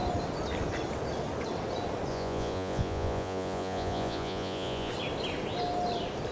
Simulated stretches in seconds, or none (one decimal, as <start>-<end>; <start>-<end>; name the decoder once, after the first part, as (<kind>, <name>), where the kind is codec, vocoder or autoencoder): 2.1-4.9 (vocoder, Vocos)